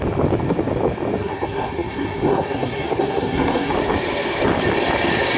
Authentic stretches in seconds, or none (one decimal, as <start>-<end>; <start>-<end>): 0.0-1.2; 3.7-5.4